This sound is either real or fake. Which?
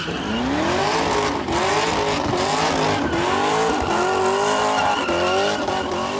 real